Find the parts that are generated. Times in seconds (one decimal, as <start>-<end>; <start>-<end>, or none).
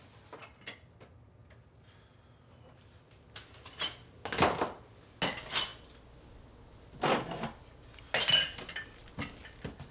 none